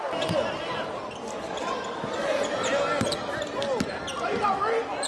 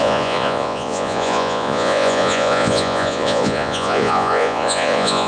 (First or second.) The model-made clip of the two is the second